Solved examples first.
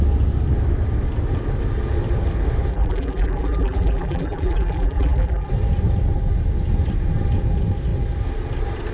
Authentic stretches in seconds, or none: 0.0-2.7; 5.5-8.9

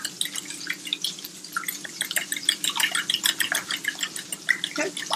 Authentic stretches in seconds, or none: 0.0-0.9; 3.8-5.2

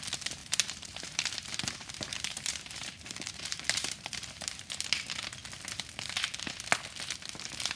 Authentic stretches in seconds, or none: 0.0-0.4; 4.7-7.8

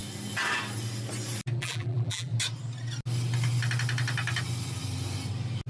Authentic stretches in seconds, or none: 0.0-1.6; 2.3-5.7